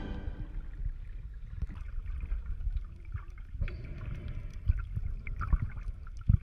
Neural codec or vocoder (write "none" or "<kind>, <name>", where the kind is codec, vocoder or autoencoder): none